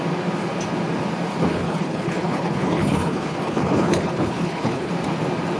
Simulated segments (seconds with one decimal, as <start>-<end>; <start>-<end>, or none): 1.5-4.9